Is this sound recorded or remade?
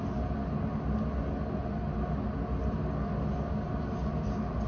recorded